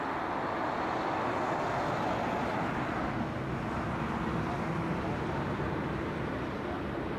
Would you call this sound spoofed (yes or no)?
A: no